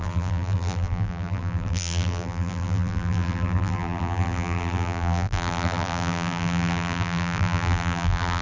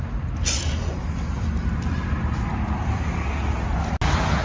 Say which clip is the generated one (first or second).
first